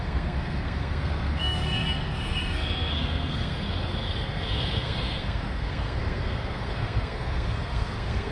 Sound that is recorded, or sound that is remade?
remade